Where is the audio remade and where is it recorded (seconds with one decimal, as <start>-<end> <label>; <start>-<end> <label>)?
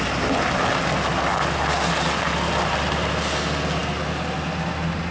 0.0-5.1 recorded